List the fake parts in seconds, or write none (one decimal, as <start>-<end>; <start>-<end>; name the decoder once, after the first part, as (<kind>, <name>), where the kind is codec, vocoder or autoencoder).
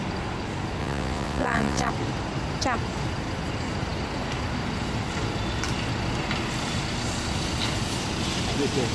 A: 0.8-1.9 (vocoder, WaveNeXt)